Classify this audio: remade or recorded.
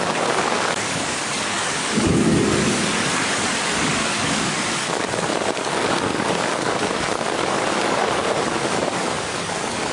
remade